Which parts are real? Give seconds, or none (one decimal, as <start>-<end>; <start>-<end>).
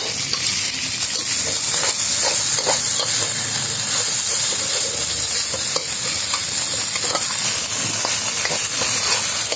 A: 0.0-9.6